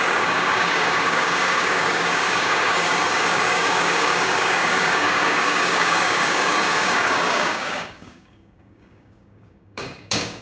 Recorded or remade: remade